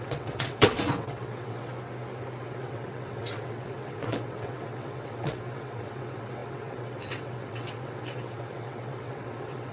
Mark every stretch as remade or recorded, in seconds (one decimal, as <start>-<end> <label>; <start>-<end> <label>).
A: 0.0-1.7 remade; 1.7-2.4 recorded; 2.4-9.7 remade